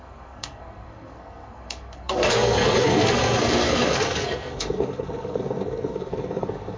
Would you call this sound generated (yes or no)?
yes